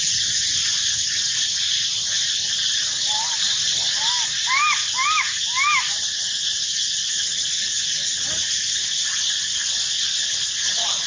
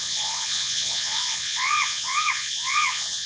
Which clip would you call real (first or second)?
first